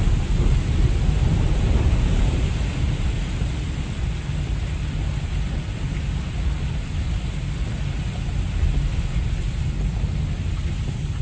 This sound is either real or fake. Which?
real